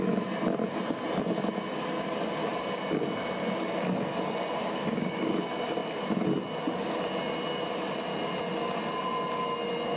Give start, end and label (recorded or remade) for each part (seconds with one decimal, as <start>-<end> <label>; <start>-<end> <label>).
0.0-4.6 recorded; 4.6-5.3 remade; 5.3-10.0 recorded